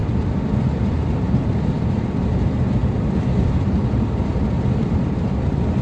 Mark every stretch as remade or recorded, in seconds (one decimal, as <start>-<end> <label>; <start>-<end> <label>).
0.0-0.8 recorded; 0.8-2.8 remade; 2.8-3.5 recorded; 3.5-5.8 remade